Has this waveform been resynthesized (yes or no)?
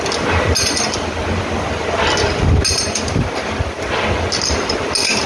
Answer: no